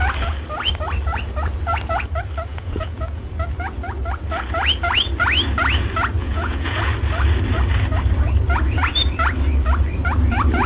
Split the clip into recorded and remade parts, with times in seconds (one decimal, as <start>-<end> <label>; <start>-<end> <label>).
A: 0.0-2.5 recorded; 2.5-3.3 remade; 3.3-6.2 recorded; 6.2-6.8 remade; 6.8-10.7 recorded